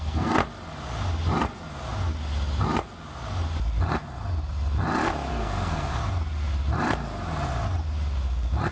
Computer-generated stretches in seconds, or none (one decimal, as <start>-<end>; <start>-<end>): 0.0-0.4; 5.3-6.0